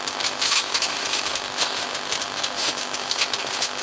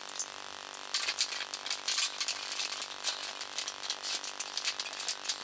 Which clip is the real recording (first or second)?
second